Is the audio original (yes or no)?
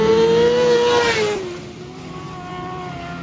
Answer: yes